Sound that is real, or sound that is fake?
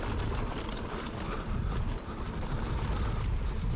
real